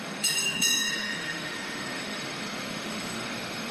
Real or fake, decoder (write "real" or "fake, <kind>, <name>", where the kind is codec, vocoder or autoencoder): fake, autoencoder, DAC-VAE